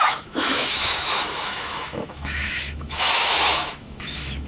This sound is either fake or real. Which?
fake